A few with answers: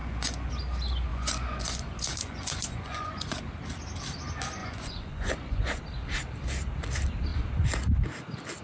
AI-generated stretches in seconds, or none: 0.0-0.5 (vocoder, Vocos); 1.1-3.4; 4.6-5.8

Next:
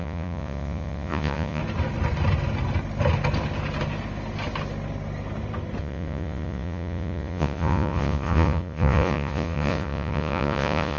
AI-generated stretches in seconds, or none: 0.0-1.6 (vocoder, Vocos); 5.8-11.0

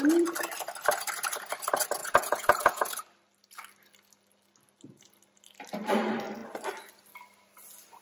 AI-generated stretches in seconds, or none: 2.0-2.9 (vocoder, Vocos)